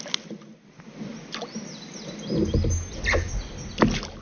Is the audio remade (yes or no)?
no